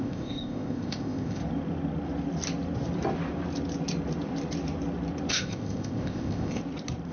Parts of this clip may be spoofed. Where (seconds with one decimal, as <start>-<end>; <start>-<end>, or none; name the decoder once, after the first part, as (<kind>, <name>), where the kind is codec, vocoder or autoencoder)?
0.0-1.4 (codec, ZipCodec); 5.3-6.6